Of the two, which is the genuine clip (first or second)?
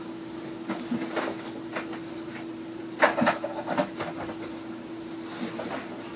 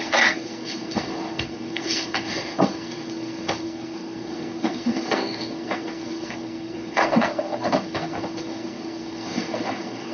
first